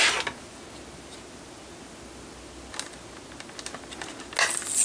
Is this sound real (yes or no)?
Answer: yes